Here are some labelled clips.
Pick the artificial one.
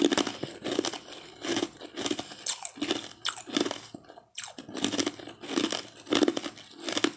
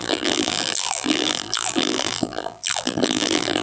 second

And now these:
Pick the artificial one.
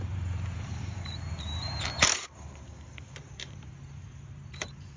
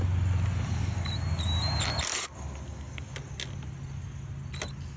first